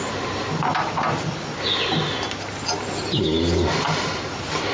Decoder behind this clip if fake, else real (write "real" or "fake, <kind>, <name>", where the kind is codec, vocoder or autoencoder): real